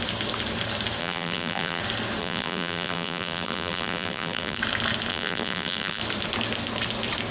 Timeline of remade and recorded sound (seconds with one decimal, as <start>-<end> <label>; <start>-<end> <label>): 0.0-1.0 recorded; 1.0-1.8 remade; 1.8-2.2 recorded; 2.2-4.6 remade; 4.6-5.1 recorded; 5.1-6.0 remade; 6.0-7.3 recorded